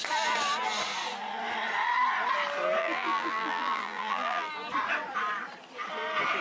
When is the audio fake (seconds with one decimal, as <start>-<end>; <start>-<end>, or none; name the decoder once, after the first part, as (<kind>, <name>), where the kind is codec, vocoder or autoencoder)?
2.8-4.5 (vocoder, BigVGAN v2)